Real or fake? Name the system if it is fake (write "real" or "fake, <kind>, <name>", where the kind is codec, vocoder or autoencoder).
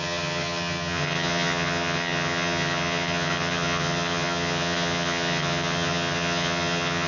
fake, vocoder, HiFi-GAN